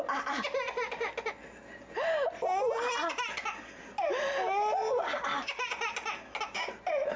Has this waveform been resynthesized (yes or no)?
no